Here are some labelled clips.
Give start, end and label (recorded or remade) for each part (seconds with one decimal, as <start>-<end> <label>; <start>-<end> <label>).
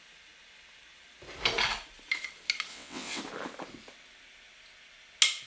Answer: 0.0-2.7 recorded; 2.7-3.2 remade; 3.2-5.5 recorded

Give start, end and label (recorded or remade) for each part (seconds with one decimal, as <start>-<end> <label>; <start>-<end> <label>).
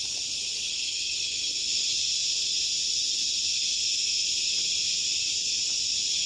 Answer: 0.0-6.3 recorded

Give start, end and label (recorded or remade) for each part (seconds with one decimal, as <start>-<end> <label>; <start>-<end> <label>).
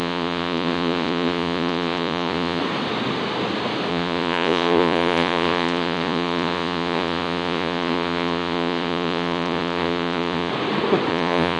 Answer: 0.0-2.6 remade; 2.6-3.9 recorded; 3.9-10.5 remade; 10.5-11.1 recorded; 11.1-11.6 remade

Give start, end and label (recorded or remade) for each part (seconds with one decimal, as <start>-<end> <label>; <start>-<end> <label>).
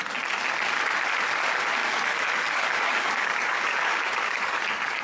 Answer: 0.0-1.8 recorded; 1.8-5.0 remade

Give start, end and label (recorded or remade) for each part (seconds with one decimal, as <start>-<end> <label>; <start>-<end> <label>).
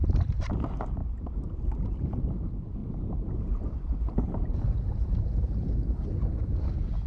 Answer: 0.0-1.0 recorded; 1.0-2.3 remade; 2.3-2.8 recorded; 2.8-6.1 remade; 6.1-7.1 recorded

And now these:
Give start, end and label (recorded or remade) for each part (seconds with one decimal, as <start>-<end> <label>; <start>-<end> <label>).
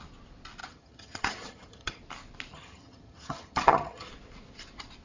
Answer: 0.0-0.6 recorded; 0.6-2.0 remade; 2.0-2.5 recorded; 2.5-4.1 remade; 4.1-5.0 recorded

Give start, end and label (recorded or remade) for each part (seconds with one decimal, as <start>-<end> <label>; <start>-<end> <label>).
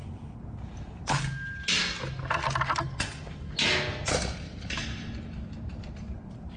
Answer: 0.0-6.6 recorded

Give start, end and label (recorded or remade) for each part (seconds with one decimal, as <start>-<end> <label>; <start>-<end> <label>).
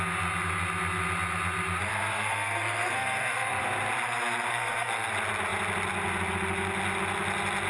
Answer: 0.0-1.9 recorded; 1.9-3.6 remade; 3.6-4.5 recorded; 4.5-5.1 remade; 5.1-7.7 recorded